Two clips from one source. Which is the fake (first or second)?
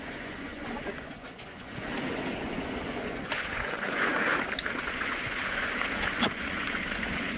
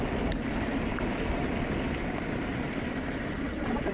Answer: first